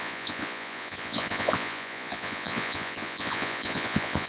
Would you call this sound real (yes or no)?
no